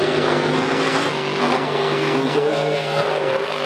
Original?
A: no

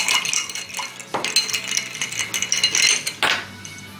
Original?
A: yes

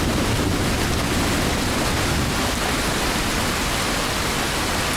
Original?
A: yes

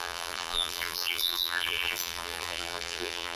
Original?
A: no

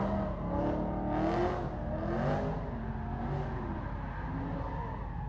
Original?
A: yes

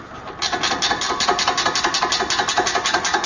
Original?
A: yes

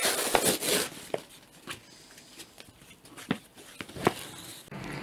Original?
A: yes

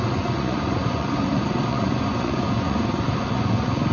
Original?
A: no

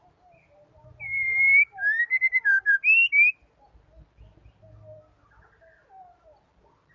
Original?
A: yes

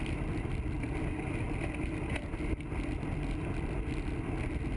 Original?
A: yes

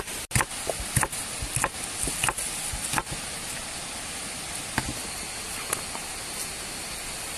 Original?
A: yes